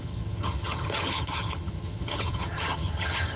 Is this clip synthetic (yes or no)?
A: yes